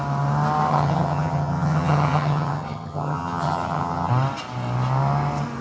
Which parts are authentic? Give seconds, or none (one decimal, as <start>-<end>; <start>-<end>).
0.0-0.7; 4.1-5.6